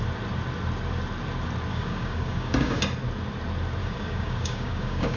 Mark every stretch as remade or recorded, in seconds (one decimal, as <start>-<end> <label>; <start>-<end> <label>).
0.0-1.7 recorded; 1.7-2.8 remade; 2.8-3.8 recorded; 3.8-5.2 remade